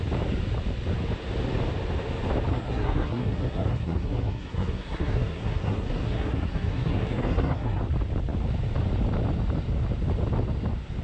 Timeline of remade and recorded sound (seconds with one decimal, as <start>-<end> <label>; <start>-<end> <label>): 0.0-2.5 recorded; 2.5-7.8 remade; 7.8-11.0 recorded